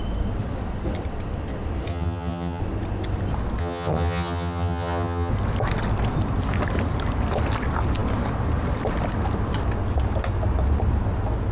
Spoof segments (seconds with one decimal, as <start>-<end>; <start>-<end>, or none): 1.9-2.6; 3.6-5.3